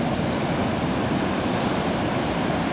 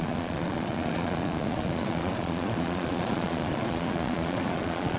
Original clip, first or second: first